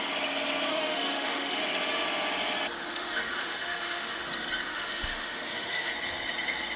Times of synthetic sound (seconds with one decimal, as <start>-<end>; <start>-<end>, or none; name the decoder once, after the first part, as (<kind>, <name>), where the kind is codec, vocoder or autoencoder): 0.7-1.6 (autoencoder, DAC-VAE); 2.8-4.2; 4.7-5.9

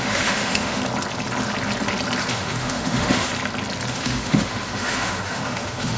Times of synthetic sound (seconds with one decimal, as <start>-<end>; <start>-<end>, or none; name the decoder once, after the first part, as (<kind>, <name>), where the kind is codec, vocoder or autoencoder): 0.0-0.8 (autoencoder, DAC-VAE); 2.3-3.3; 3.9-6.0

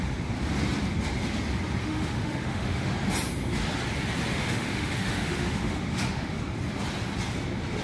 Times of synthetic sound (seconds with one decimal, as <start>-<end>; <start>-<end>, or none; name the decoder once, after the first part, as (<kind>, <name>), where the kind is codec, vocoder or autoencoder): 1.8-2.9 (autoencoder, DAC-VAE); 4.3-6.4

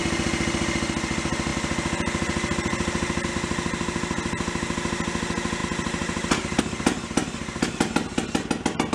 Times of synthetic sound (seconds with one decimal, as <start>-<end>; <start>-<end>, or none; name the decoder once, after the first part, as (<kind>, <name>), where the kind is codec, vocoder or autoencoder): none

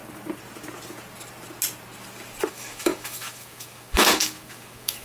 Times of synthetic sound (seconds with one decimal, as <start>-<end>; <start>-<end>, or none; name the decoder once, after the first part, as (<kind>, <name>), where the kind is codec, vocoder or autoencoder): 2.5-5.0 (autoencoder, DAC-VAE)

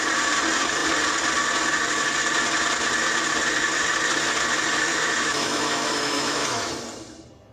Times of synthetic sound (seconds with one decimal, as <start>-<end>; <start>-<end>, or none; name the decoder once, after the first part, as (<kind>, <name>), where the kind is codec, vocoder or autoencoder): 4.9-6.7 (autoencoder, DAC-VAE)